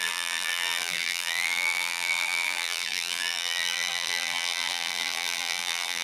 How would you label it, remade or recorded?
remade